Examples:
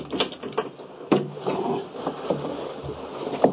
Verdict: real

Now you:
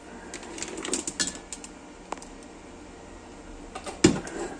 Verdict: real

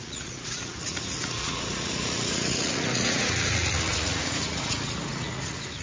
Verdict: fake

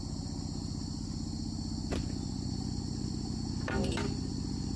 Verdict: real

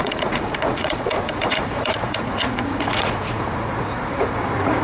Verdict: fake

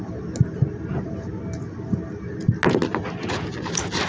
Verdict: real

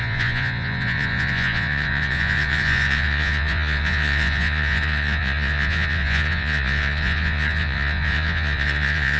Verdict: fake